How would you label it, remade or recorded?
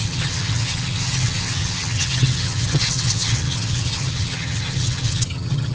remade